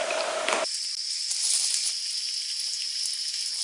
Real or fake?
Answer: real